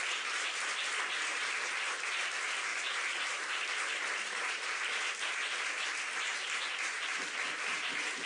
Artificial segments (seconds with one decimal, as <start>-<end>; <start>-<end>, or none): none